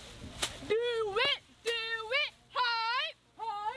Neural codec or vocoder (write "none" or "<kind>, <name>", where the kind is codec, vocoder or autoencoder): none